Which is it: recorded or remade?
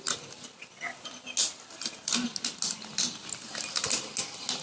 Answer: recorded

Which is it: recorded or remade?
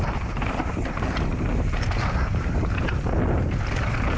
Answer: recorded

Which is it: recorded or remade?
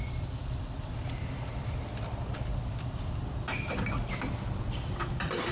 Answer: remade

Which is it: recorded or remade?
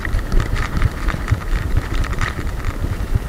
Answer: remade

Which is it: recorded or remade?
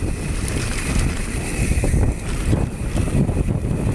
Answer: remade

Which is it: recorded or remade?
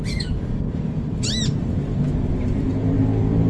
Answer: remade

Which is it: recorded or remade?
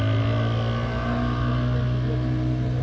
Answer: recorded